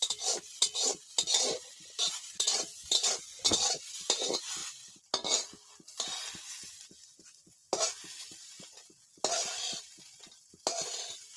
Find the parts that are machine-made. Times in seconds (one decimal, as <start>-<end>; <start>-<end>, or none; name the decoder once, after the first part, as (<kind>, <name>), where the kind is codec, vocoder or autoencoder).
none